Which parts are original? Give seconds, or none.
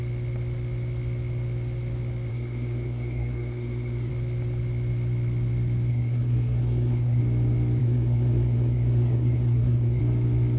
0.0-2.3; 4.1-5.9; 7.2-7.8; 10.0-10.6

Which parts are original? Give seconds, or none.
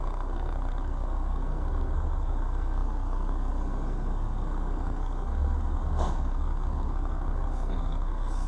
none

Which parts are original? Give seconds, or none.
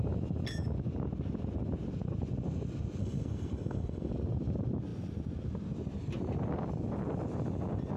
0.0-3.0; 4.1-8.0